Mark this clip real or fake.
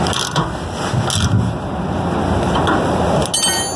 real